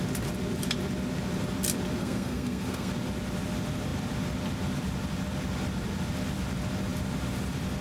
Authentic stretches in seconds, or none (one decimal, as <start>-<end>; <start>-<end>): 0.0-2.0; 2.9-7.8